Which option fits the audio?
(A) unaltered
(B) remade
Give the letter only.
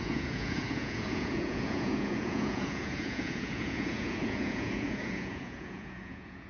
B